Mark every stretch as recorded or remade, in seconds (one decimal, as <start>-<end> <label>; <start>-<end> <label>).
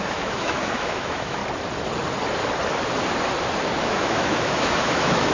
0.0-1.4 remade; 1.4-3.8 recorded; 3.8-5.3 remade